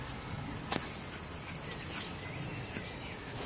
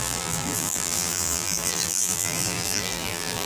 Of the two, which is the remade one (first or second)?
second